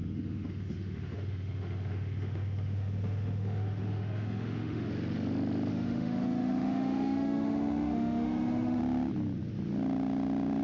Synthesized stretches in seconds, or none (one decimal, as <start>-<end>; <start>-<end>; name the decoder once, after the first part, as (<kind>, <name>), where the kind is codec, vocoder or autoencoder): 0.0-4.9 (autoencoder, DAC-VAE); 5.7-8.8